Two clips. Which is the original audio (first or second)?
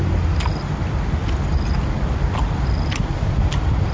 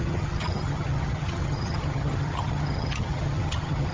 first